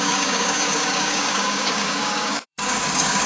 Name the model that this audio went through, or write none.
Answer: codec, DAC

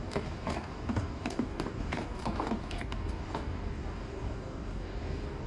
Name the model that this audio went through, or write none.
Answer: codec, DAC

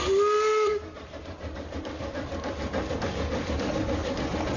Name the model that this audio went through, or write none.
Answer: none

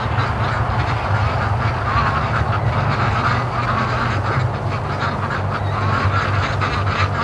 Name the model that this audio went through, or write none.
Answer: none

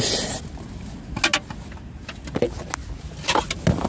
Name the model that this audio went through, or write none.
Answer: none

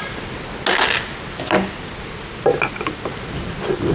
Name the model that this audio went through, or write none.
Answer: none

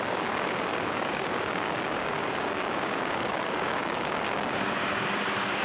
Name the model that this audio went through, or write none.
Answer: codec, DAC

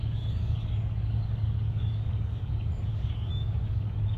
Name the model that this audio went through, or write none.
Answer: codec, DAC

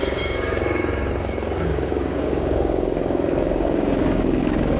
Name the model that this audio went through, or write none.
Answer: codec, DAC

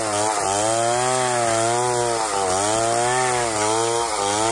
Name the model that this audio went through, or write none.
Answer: none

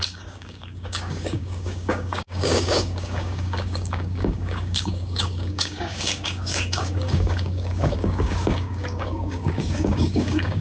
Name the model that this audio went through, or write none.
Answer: codec, DAC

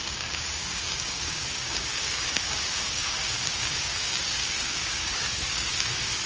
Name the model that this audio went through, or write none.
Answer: codec, DAC